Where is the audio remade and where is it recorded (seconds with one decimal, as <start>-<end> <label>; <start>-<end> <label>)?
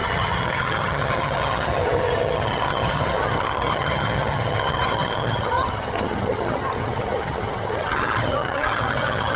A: 0.0-9.4 remade